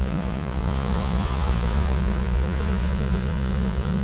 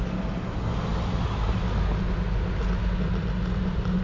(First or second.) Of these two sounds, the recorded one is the second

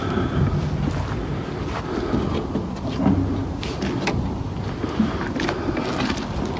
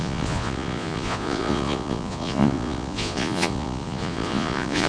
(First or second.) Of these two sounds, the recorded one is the first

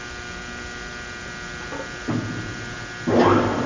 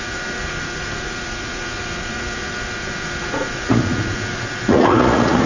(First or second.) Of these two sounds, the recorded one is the first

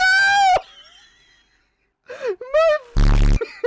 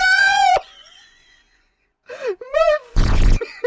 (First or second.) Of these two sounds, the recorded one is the first